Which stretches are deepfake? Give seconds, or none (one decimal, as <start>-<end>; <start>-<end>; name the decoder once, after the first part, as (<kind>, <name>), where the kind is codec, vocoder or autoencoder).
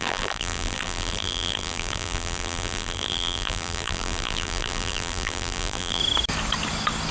0.0-6.0 (vocoder, BigVGAN v2)